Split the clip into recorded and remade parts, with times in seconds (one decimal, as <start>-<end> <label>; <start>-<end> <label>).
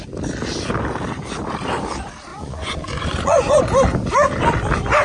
0.0-2.3 recorded; 2.3-3.6 remade; 3.6-5.0 recorded